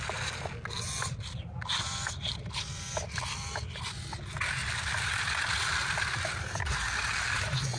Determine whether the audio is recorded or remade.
recorded